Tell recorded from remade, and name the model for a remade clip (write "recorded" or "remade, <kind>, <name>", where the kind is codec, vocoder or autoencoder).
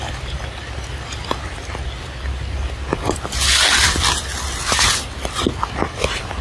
recorded